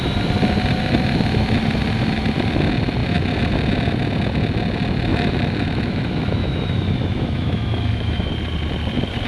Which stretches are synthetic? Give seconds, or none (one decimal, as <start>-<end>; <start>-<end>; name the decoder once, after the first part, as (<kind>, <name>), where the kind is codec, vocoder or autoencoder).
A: 5.1-8.3 (autoencoder, DAC-VAE)